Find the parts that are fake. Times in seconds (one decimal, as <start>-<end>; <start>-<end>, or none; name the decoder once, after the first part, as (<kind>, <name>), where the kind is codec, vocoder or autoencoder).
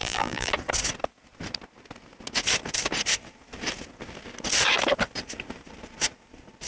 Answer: 0.0-0.5 (vocoder, BigVGAN v2)